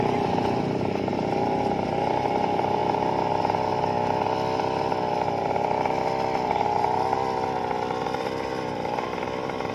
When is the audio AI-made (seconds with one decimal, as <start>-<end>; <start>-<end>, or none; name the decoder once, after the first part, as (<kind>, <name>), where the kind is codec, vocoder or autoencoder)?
none